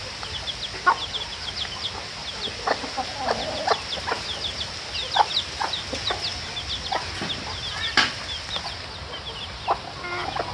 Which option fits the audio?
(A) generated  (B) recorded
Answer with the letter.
B